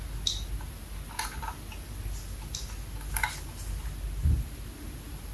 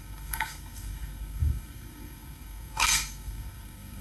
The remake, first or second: second